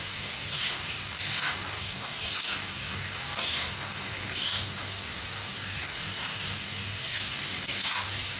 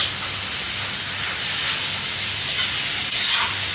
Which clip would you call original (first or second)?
second